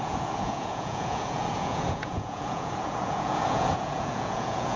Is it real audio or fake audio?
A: fake